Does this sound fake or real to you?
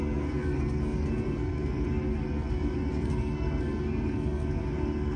fake